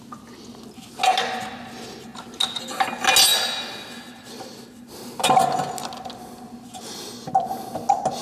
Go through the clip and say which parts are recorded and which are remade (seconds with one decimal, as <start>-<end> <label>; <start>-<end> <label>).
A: 0.0-8.2 recorded